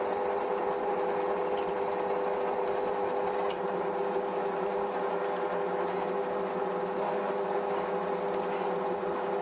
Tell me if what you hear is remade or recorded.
recorded